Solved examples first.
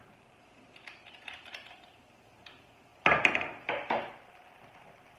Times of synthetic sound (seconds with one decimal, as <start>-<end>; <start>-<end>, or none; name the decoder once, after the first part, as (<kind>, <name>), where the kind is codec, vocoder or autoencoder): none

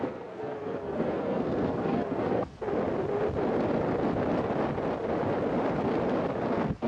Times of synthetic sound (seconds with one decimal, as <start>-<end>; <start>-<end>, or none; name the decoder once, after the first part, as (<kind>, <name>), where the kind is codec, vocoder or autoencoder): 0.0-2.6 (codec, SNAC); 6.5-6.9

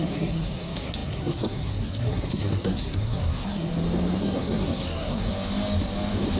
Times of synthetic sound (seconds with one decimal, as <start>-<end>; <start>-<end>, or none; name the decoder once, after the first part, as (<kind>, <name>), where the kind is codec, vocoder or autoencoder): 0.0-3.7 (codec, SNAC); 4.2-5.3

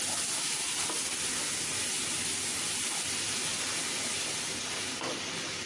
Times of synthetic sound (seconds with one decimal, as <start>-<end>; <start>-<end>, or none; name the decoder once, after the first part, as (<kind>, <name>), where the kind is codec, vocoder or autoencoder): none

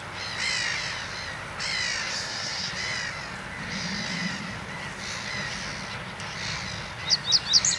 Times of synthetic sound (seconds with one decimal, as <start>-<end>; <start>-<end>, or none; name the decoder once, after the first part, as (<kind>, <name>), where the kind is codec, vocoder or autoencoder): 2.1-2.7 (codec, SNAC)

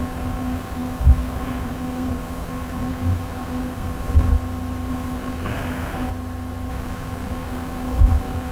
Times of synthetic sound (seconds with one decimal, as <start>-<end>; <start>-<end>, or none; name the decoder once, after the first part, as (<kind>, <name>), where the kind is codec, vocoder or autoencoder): 0.0-4.3 (codec, SNAC); 4.9-6.1; 6.7-8.5

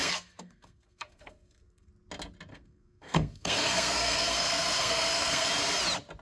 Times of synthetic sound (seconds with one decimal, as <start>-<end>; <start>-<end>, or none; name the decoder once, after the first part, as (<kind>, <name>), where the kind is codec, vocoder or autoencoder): 0.0-1.9 (codec, SNAC); 2.5-5.5